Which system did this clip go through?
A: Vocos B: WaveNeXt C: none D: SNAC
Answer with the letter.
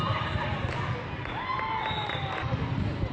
C